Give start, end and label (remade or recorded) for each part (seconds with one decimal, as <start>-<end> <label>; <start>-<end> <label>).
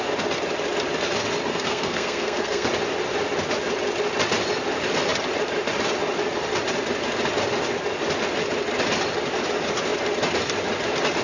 0.0-1.5 recorded; 1.5-2.7 remade; 2.7-11.2 recorded